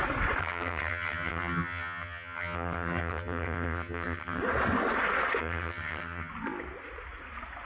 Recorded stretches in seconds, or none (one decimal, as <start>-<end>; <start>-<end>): 0.0-0.4; 4.4-5.4; 6.3-7.7

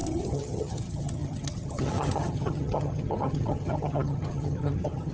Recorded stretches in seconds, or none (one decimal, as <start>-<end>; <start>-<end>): none

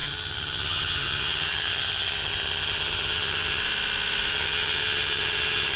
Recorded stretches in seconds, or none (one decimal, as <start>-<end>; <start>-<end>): 3.6-4.3

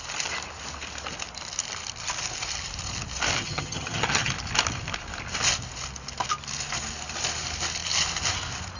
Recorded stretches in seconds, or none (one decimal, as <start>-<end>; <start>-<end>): 0.0-3.4; 4.3-8.8

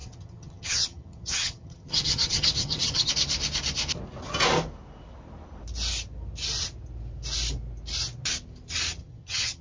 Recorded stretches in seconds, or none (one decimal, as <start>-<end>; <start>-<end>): 3.1-9.0

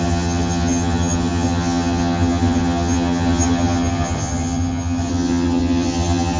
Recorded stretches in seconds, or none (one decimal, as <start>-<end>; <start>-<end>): none

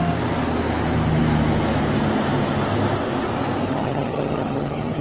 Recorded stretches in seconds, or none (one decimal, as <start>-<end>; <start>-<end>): 0.0-3.7

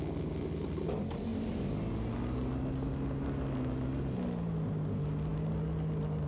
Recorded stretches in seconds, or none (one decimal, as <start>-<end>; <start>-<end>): 0.0-6.3